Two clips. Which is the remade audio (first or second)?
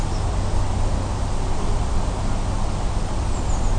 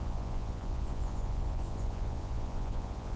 second